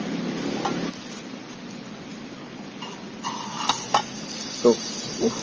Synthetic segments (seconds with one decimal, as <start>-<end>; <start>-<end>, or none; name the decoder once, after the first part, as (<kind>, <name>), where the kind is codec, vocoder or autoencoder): none